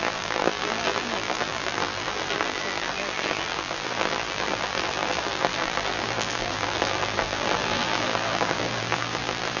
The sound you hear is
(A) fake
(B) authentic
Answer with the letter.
A